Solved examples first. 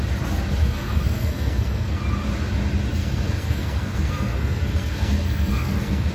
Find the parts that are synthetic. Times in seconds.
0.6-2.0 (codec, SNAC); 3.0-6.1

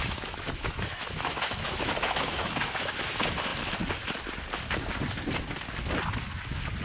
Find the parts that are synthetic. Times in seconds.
0.0-3.1 (autoencoder, DAC-VAE)

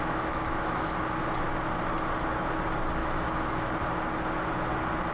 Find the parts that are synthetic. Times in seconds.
0.0-0.9 (autoencoder, DAC-VAE); 3.0-3.7

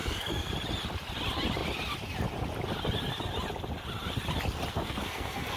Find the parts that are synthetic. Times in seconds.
0.0-0.5 (codec, SNAC); 4.7-5.6